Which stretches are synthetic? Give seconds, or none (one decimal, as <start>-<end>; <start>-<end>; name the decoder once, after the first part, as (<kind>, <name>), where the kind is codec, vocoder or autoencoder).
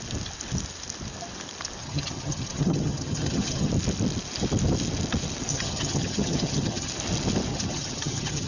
1.8-3.7 (vocoder, HiFi-GAN); 5.5-6.9; 7.5-8.5